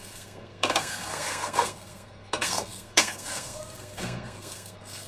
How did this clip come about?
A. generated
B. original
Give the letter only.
A